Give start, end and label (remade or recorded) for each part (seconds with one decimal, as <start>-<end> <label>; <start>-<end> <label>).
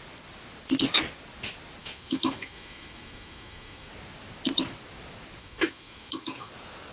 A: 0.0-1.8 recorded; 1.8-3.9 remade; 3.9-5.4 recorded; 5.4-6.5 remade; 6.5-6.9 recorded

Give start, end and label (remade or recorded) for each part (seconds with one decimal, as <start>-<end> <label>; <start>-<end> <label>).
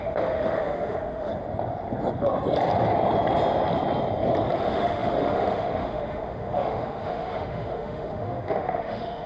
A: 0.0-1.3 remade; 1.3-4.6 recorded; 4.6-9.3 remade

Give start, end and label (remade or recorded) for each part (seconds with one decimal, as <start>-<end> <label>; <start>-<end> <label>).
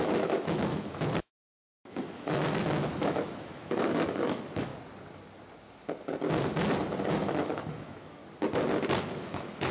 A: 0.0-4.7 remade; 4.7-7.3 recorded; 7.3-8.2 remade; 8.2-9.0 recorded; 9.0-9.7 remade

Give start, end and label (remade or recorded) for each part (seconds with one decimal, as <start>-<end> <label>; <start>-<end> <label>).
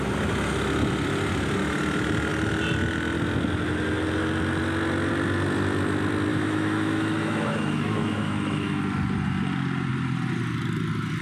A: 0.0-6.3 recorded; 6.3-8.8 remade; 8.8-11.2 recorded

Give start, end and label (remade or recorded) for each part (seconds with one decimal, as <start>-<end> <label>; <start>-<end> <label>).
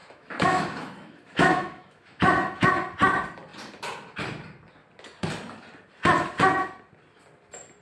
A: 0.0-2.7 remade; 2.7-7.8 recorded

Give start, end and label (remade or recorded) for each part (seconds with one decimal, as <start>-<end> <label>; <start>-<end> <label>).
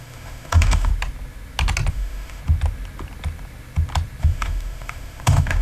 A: 0.0-0.9 remade; 0.9-1.9 recorded; 1.9-2.4 remade; 2.4-4.2 recorded; 4.2-5.6 remade